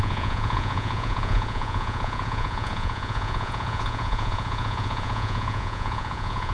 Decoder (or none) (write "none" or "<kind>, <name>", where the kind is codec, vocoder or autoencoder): vocoder, Vocos